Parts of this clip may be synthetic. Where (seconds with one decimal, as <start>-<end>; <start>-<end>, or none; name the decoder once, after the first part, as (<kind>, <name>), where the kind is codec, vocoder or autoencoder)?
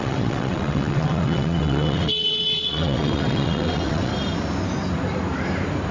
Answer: 0.0-4.1 (vocoder, WaveNeXt)